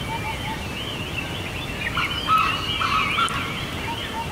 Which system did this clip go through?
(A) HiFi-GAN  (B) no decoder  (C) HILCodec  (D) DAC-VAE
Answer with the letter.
B